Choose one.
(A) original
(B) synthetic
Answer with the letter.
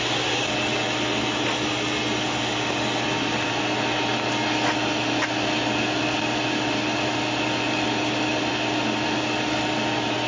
A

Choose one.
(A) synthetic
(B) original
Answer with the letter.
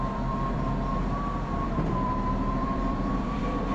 A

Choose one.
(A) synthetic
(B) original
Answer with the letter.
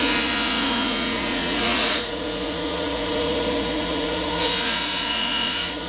A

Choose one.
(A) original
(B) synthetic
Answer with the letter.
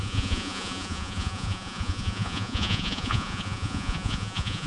B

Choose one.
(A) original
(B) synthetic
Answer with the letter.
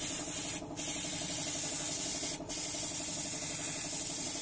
A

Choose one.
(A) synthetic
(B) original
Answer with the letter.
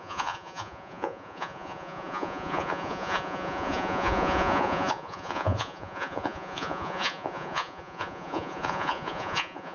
A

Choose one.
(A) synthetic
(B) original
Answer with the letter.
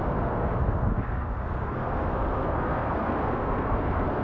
A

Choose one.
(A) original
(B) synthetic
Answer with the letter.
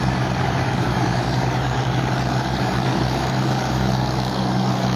B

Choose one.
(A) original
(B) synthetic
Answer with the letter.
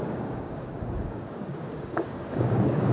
B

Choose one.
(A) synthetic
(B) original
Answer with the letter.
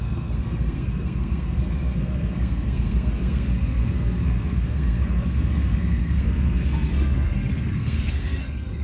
A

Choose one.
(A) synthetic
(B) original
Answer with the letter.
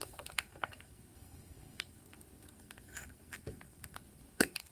A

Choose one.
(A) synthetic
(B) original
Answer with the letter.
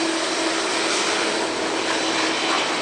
B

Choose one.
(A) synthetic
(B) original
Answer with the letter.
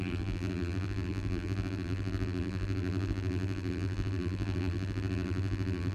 A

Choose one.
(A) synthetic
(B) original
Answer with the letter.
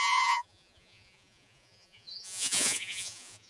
A